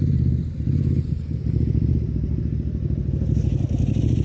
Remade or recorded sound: recorded